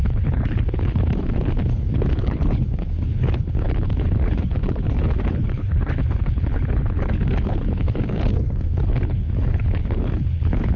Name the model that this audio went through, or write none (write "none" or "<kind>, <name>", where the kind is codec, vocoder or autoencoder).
codec, HILCodec